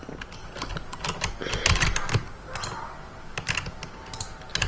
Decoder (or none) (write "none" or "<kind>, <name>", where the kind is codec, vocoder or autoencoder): none